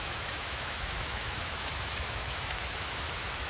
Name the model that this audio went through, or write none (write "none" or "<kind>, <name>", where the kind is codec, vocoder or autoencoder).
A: autoencoder, DAC-VAE